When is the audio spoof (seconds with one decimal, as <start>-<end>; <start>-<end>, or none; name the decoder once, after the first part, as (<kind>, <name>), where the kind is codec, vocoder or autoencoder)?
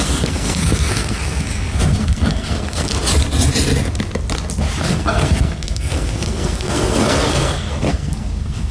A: 0.0-2.9 (codec, SNAC); 4.9-8.7